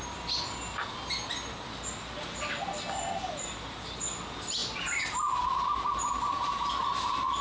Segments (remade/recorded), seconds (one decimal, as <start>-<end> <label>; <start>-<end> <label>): 0.0-7.4 recorded